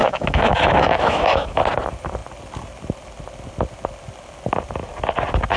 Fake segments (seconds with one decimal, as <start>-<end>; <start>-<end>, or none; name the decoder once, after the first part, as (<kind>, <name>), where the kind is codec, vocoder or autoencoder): 0.0-1.6 (autoencoder, DAC-VAE)